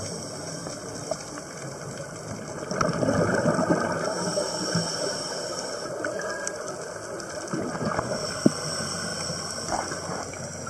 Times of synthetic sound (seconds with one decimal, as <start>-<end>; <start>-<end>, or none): 0.6-3.7; 9.1-9.8